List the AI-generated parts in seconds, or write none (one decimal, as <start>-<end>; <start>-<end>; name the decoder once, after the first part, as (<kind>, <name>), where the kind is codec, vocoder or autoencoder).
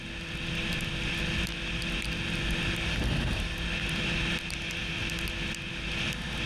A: none